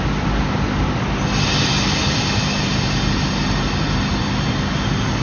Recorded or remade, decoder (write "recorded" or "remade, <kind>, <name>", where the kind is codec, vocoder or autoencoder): recorded